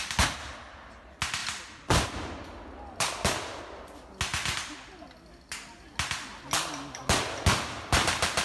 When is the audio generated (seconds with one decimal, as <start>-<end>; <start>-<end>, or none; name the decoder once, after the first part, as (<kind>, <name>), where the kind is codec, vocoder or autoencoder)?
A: none